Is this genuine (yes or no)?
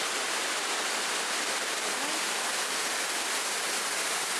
yes